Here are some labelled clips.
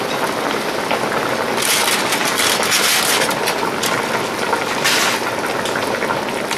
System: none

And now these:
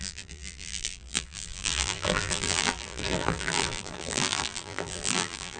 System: vocoder, BigVGAN v2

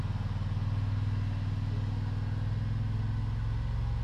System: none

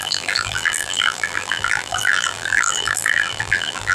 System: vocoder, BigVGAN v2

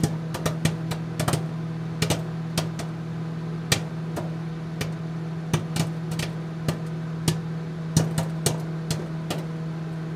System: none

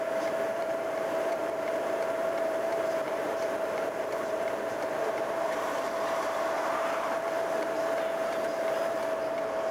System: vocoder, BigVGAN v2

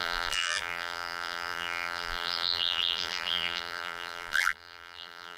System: vocoder, BigVGAN v2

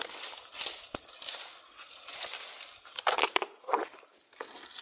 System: none